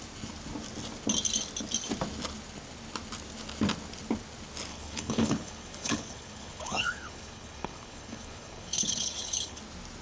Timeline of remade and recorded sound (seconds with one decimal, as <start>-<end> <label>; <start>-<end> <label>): 0.0-4.7 recorded; 4.7-9.6 remade; 9.6-10.0 recorded